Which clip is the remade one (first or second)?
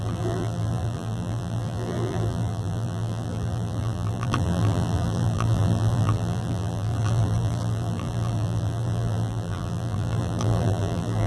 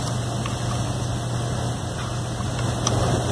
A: first